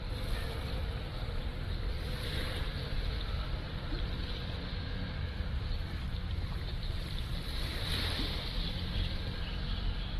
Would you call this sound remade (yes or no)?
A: yes